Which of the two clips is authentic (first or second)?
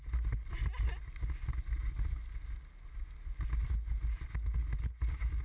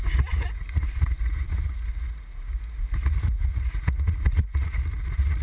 first